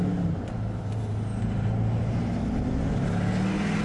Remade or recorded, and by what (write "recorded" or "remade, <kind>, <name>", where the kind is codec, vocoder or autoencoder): recorded